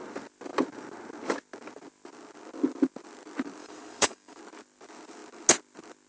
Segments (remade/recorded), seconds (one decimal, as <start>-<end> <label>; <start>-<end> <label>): 0.0-3.6 recorded; 3.6-4.4 remade; 4.4-6.1 recorded